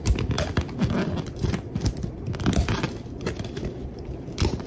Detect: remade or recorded remade